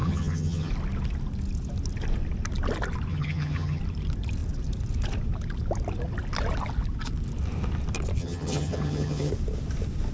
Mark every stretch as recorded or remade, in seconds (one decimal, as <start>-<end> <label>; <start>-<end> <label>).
0.0-0.7 remade; 0.7-3.1 recorded; 3.1-3.8 remade; 3.8-8.2 recorded; 8.2-9.3 remade; 9.3-10.1 recorded